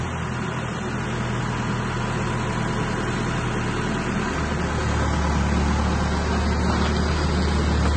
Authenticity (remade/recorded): recorded